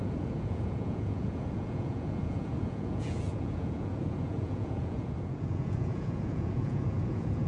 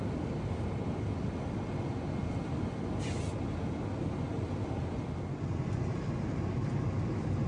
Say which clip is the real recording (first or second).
second